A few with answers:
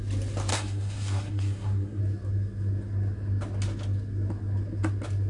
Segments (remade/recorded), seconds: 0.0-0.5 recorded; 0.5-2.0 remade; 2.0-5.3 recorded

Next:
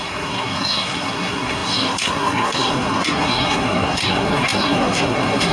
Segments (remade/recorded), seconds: 0.0-5.5 remade

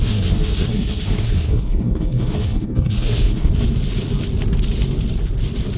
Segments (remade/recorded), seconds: 0.0-3.5 remade; 3.5-5.8 recorded

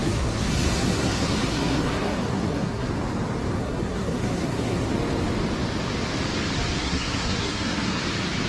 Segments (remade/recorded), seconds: 0.0-2.9 remade; 2.9-3.6 recorded; 3.6-4.9 remade; 4.9-6.8 recorded; 6.8-8.0 remade; 8.0-8.5 recorded

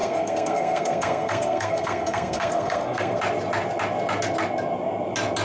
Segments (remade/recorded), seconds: 0.0-3.2 remade; 3.2-5.4 recorded

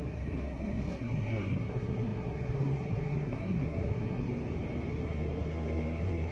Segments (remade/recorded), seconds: 0.0-4.3 remade; 4.3-4.9 recorded; 4.9-6.3 remade